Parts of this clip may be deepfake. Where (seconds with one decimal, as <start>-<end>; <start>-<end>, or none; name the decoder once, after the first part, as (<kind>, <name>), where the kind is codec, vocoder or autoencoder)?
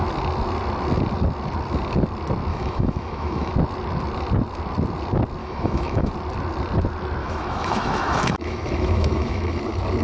2.5-3.5 (autoencoder, DAC-VAE); 5.4-6.1; 7.2-9.6